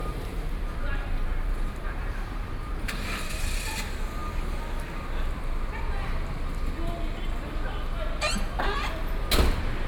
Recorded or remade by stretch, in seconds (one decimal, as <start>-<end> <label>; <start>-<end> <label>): 0.0-3.3 remade; 3.3-9.9 recorded